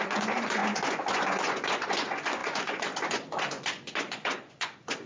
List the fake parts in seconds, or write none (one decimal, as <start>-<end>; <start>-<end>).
0.0-5.1